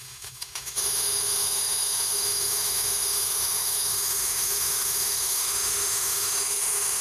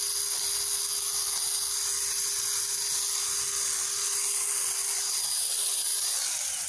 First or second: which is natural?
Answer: second